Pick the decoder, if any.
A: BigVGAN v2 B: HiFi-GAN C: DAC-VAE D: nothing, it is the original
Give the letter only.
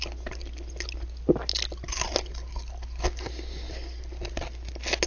D